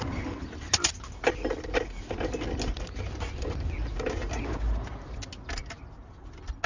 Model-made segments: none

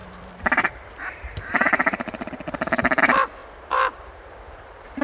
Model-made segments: 0.0-3.0 (vocoder, BigVGAN v2); 3.4-5.0